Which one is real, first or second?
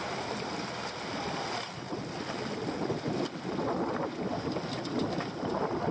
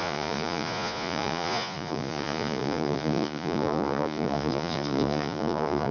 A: first